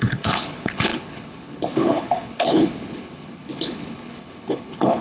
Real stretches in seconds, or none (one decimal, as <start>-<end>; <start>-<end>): none